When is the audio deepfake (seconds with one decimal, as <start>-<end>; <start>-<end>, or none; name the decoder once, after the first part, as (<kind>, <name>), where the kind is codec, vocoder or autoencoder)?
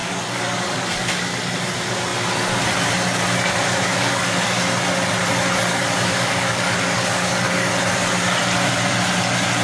0.0-1.4 (codec, DAC); 3.5-4.6; 5.7-7.7